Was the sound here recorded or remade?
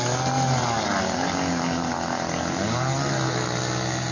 recorded